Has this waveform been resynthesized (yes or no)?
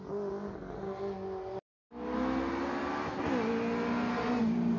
no